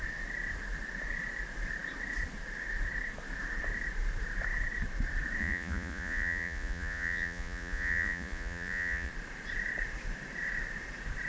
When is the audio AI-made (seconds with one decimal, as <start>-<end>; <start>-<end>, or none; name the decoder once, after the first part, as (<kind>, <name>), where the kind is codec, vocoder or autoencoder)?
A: 5.4-9.1 (vocoder, Vocos)